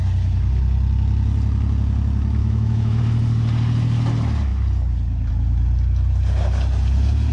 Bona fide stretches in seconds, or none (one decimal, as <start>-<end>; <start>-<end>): 0.0-2.4; 3.0-7.3